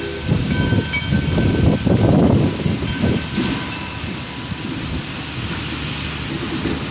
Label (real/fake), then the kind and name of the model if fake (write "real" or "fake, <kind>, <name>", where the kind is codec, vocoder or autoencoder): real